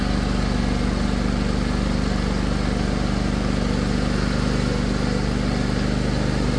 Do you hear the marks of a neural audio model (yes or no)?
no